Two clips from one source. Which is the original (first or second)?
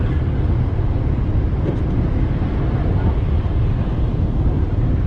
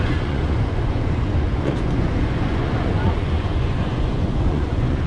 first